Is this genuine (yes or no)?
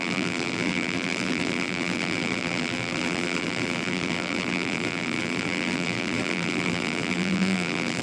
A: no